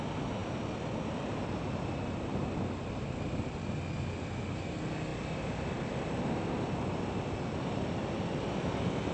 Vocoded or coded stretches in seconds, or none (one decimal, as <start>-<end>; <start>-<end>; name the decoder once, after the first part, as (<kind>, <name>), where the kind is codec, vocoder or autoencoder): none